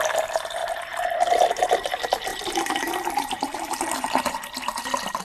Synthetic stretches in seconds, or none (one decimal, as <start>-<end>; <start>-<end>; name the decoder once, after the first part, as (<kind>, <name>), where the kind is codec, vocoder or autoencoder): 2.3-4.1 (vocoder, BigVGAN v2)